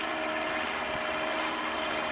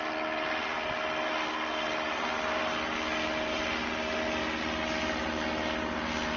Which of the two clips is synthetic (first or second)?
first